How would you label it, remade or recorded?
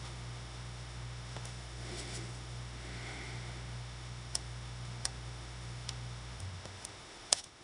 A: remade